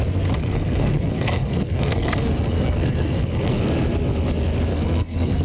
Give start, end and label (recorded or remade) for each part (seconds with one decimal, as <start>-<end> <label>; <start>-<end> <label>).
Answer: 0.0-0.4 recorded; 0.4-3.6 remade; 3.6-4.7 recorded; 4.7-5.4 remade